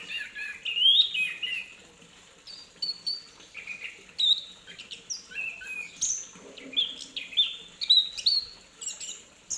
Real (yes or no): yes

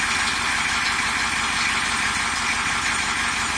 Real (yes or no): yes